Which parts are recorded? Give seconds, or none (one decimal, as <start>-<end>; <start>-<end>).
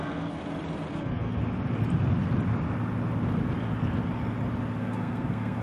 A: 0.4-0.9; 1.4-4.8